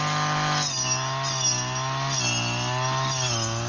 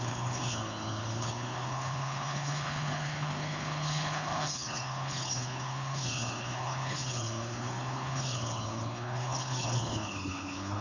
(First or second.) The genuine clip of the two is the first